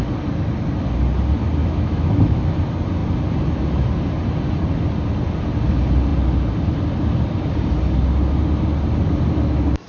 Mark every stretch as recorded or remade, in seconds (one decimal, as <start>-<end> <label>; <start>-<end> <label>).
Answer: 0.0-1.6 recorded; 1.6-2.4 remade; 2.4-9.9 recorded